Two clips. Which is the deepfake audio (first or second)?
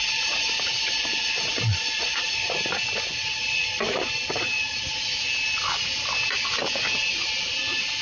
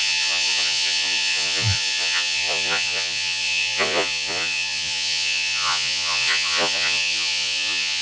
second